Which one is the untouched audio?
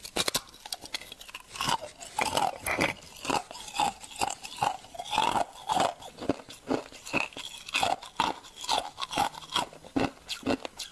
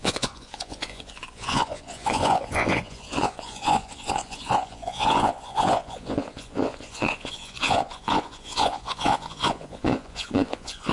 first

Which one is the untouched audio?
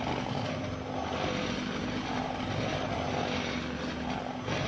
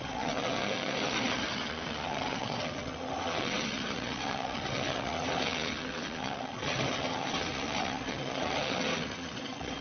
first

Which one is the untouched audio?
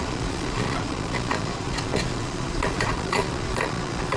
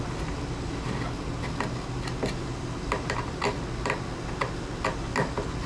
second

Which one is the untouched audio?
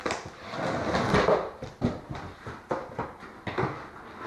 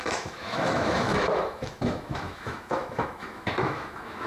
first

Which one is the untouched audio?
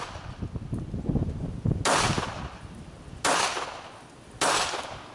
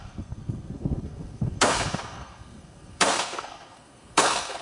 first